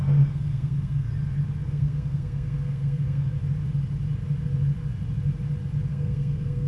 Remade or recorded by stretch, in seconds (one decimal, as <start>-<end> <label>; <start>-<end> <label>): 0.0-1.1 remade; 1.1-1.7 recorded; 1.7-3.4 remade; 3.4-5.9 recorded; 5.9-6.7 remade